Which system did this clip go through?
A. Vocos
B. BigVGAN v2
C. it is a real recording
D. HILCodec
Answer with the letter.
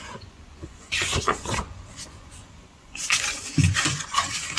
A